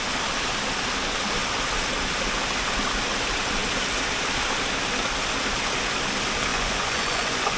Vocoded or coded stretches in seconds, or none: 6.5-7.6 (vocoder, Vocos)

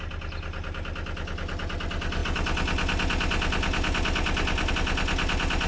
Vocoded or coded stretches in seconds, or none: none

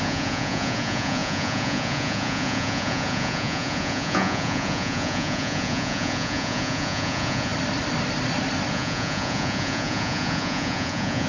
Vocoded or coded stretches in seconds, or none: 0.0-7.5 (vocoder, Vocos); 8.7-11.3